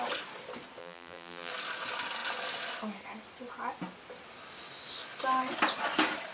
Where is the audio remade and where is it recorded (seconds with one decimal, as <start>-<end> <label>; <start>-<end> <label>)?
0.0-0.8 recorded; 0.8-1.5 remade; 1.5-6.3 recorded